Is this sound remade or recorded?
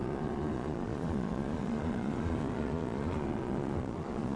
remade